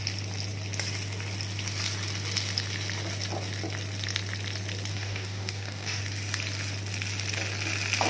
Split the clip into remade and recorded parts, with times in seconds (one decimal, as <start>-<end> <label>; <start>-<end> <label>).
0.0-4.9 recorded; 4.9-6.0 remade; 6.0-8.1 recorded